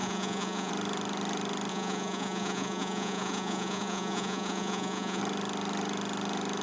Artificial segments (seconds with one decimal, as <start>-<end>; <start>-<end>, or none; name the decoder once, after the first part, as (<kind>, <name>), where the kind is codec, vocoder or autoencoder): 0.0-0.7 (vocoder, Vocos); 1.7-5.2